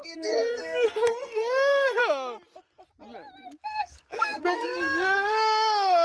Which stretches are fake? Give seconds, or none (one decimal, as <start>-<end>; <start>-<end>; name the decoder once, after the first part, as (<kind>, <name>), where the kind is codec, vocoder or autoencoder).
0.0-2.0 (codec, SNAC); 3.6-6.0